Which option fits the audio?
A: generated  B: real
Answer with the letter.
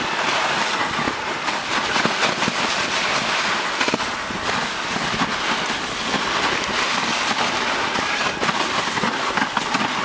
B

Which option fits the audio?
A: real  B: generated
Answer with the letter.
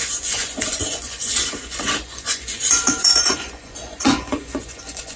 B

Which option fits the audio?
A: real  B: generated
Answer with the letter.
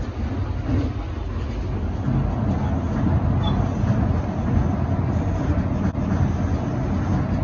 A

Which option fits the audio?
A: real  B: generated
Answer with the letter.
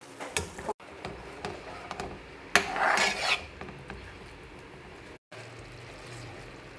A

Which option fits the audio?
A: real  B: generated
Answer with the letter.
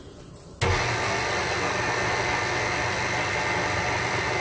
A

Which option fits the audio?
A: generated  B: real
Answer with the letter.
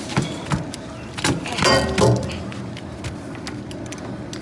B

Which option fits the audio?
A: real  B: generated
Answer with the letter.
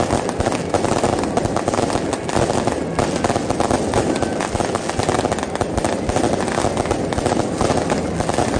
A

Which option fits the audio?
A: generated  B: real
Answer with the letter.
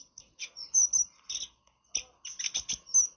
B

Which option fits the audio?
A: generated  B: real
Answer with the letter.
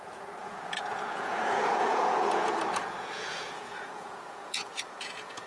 A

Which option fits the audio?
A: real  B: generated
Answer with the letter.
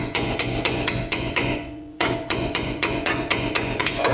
B